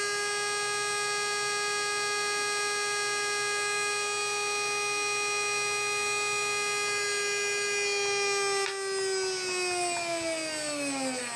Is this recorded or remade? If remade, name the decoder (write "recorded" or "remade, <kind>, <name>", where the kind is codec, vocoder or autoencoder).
recorded